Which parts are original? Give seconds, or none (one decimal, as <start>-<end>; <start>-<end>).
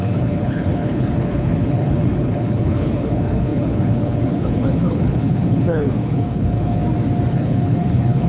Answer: 6.8-7.3